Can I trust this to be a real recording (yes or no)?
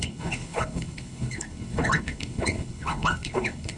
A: no